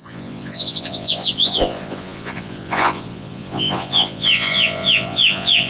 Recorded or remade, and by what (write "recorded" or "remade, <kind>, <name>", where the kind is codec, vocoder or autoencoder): remade, vocoder, Vocos